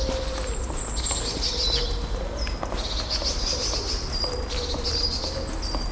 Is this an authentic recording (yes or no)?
yes